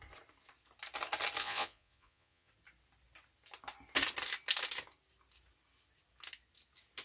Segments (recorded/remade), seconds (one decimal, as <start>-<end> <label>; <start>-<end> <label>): 0.0-1.4 recorded; 1.4-2.5 remade; 2.5-7.0 recorded